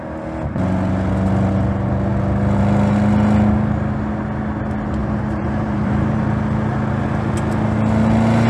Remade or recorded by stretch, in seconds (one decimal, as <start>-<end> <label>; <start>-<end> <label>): 0.0-5.0 recorded; 5.0-6.2 remade; 6.2-8.5 recorded